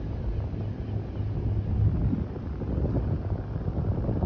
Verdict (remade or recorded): recorded